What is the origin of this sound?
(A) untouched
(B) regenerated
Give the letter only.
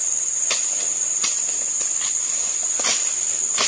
A